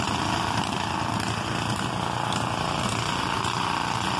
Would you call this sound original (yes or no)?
yes